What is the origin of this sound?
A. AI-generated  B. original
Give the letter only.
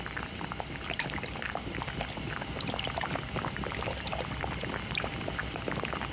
A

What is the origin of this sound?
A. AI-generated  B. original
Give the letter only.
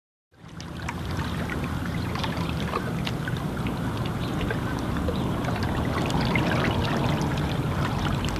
B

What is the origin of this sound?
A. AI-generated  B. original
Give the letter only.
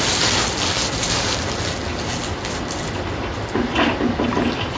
B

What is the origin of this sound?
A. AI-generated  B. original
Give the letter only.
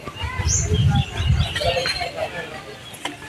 B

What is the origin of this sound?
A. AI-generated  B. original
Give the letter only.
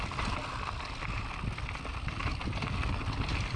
B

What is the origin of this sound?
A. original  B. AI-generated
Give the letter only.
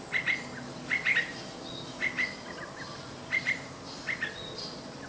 A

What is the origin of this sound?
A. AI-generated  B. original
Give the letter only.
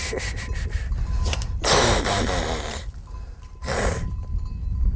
B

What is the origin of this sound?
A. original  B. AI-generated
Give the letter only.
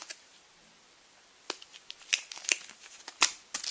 A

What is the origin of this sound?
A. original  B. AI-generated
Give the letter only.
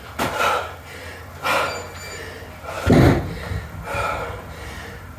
A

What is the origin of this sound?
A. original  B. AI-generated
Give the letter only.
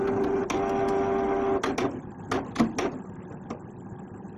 A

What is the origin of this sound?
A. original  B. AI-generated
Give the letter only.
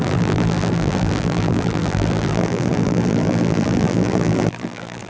B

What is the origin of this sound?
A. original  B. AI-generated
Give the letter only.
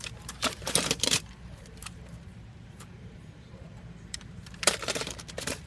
B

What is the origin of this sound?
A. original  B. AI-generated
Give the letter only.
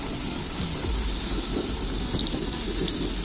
A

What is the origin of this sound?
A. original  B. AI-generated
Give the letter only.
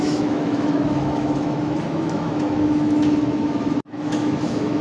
B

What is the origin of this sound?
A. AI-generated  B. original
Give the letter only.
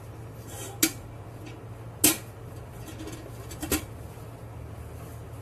B